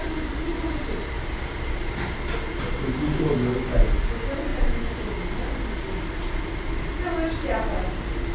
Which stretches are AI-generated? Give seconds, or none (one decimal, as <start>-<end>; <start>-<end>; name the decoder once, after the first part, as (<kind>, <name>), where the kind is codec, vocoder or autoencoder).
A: none